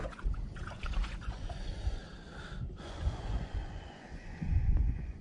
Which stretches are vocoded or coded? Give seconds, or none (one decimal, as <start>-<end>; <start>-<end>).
0.0-2.0; 2.8-5.2